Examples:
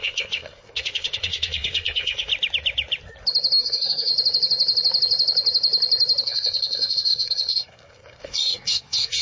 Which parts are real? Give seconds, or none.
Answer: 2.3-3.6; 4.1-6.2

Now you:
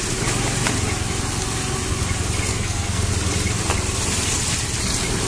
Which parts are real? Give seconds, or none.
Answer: 0.0-2.5; 3.1-5.3

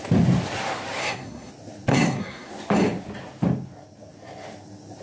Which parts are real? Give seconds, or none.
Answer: 0.0-1.0; 1.5-1.9; 2.5-5.0

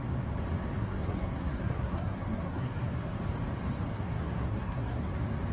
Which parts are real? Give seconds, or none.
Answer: 0.0-0.8; 3.2-3.9; 5.1-5.5

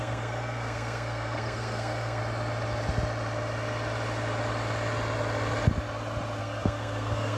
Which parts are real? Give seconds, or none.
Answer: 2.2-6.4

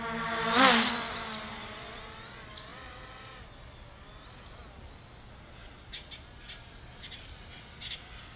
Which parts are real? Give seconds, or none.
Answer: 0.0-8.4